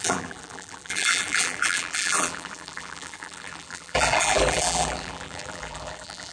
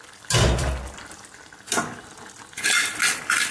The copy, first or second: first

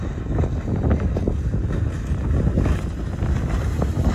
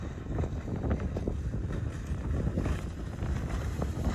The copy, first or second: second